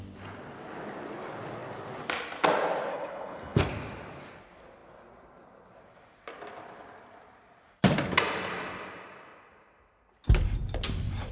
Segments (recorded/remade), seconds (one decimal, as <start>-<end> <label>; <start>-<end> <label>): 0.0-2.9 recorded; 2.9-3.6 remade; 3.6-11.3 recorded